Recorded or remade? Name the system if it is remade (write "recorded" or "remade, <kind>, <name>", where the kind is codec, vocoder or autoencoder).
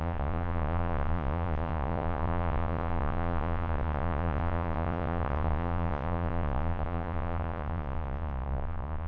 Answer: remade, vocoder, Vocos